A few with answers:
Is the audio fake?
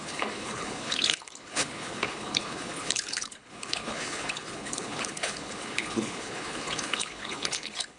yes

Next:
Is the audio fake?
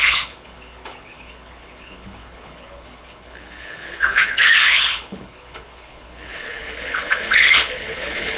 yes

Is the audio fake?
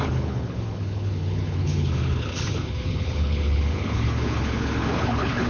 yes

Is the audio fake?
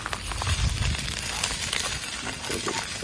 no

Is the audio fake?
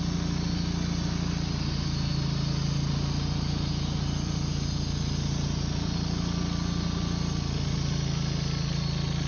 no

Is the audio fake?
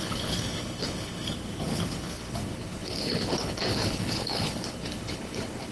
yes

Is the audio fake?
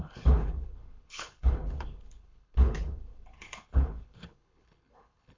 yes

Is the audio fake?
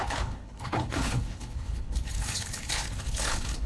yes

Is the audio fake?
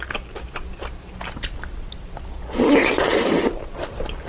no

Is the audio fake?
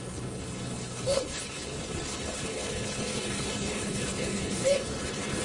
yes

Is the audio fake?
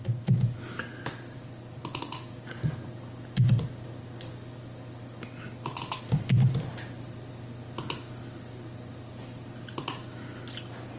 no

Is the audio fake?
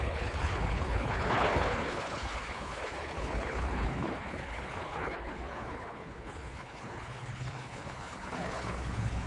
yes